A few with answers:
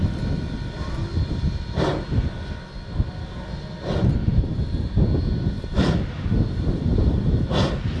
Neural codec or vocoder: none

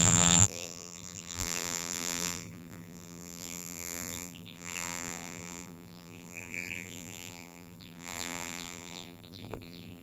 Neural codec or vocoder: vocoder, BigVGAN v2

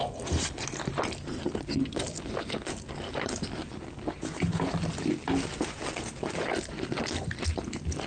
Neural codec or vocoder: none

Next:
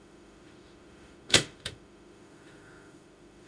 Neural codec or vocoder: autoencoder, DAC-VAE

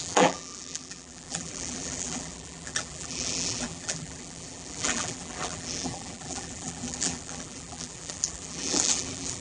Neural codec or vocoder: vocoder, BigVGAN v2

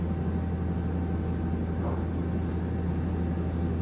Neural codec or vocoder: none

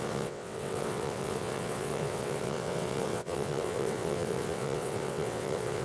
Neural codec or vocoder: vocoder, WaveNeXt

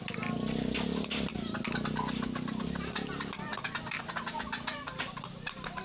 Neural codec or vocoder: none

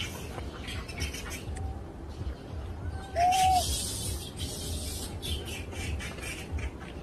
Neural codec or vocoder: vocoder, BigVGAN v2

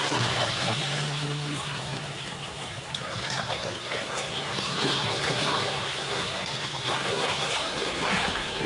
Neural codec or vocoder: codec, SNAC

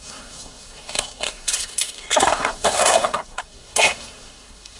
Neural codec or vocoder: codec, SNAC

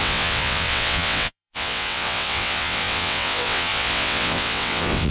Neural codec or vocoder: vocoder, WaveNeXt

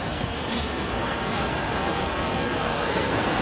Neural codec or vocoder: codec, SNAC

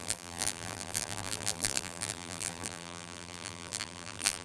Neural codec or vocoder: vocoder, BigVGAN v2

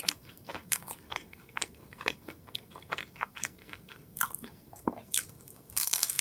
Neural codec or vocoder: codec, SNAC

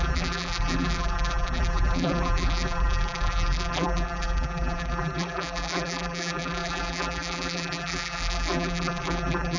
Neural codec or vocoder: vocoder, BigVGAN v2